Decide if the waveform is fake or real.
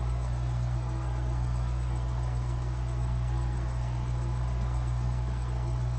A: fake